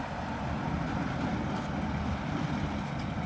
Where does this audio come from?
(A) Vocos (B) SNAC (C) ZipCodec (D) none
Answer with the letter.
D